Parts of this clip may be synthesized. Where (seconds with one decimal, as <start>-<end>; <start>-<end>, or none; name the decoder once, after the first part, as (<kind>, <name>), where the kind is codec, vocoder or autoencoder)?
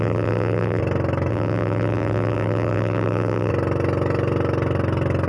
0.0-0.8 (vocoder, BigVGAN v2); 1.3-3.5